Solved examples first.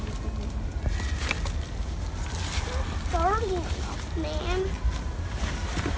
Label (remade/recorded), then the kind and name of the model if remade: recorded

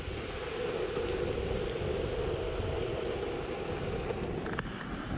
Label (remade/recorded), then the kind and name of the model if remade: recorded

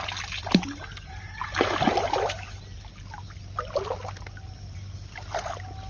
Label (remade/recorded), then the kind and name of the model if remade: recorded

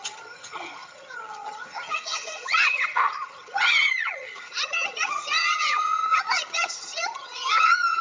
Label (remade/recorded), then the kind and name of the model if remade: remade, vocoder, HiFi-GAN